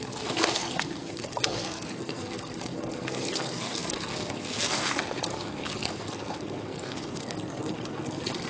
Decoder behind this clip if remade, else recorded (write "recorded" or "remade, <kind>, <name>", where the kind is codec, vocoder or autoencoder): remade, codec, SNAC